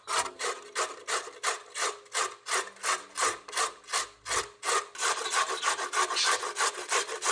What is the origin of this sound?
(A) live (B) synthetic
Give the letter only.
A